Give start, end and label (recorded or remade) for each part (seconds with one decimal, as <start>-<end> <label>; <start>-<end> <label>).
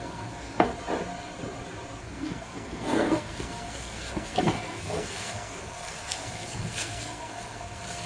0.0-0.7 remade; 0.7-2.0 recorded; 2.0-8.1 remade